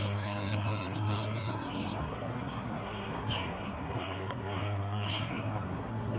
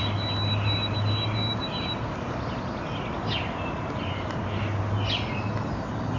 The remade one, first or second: first